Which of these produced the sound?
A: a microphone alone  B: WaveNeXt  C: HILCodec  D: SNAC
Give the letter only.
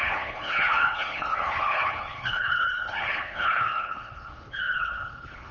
C